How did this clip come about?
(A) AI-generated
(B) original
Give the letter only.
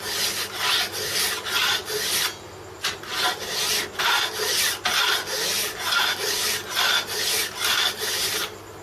B